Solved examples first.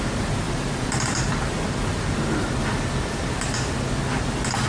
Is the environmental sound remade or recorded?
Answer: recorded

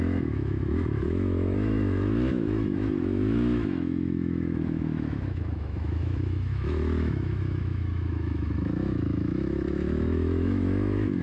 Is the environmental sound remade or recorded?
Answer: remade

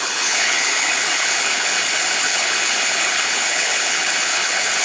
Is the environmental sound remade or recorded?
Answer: remade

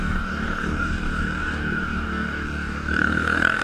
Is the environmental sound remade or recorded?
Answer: remade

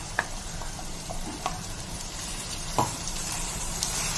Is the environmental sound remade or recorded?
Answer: remade